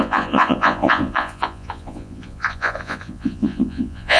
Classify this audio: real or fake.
fake